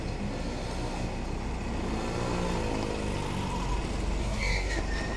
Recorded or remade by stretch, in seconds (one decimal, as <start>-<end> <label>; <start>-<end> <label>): 0.0-4.2 recorded; 4.2-4.8 remade; 4.8-5.2 recorded